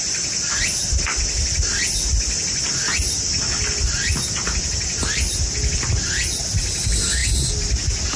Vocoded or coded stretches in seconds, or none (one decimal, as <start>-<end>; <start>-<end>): none